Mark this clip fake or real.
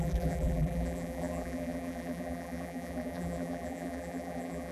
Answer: fake